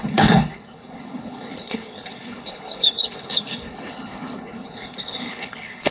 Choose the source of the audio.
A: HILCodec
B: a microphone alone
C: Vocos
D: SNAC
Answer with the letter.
A